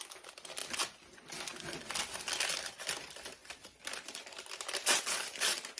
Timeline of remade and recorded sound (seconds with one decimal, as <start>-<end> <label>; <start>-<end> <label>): 0.0-5.8 recorded